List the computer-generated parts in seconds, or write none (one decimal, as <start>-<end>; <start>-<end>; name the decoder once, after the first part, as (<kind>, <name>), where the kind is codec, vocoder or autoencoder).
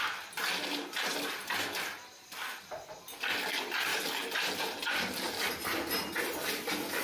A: 3.9-4.5 (vocoder, BigVGAN v2)